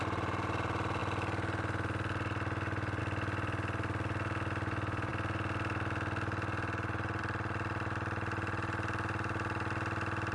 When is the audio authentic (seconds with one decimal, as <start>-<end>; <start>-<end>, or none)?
0.0-10.3

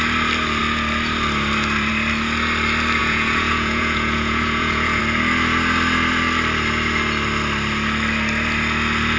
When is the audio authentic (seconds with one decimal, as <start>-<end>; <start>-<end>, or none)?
0.0-3.0; 5.0-9.2